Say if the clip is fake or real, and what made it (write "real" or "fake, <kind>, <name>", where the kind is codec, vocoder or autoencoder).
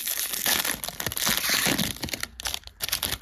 real